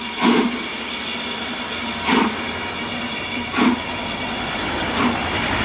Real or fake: fake